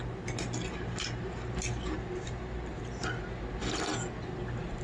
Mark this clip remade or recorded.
recorded